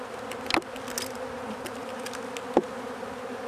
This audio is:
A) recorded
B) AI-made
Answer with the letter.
A